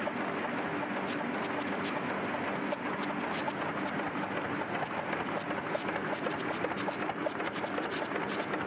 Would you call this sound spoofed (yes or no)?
no